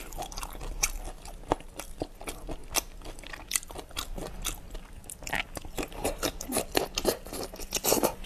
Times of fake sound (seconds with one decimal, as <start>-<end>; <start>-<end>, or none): 0.6-1.2